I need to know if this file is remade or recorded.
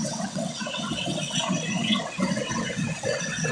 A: remade